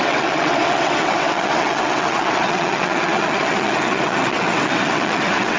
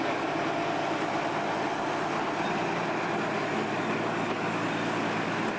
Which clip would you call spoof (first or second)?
first